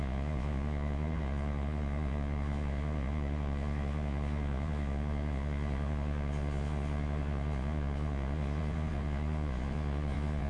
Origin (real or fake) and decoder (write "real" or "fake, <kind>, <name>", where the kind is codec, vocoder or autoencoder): fake, vocoder, Vocos